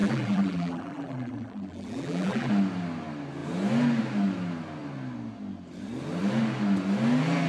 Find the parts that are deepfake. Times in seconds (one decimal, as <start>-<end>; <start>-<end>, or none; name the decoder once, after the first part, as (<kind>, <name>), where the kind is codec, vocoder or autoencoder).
0.0-2.5 (vocoder, BigVGAN v2)